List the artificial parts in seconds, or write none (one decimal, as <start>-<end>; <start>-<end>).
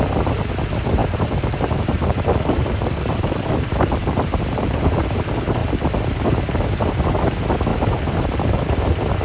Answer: 1.0-4.9; 7.7-8.6